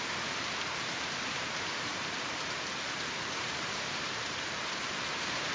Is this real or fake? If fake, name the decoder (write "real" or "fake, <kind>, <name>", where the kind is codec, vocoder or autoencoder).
fake, vocoder, BigVGAN v2